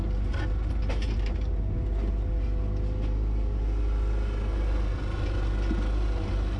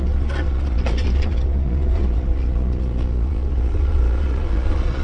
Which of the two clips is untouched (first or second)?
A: first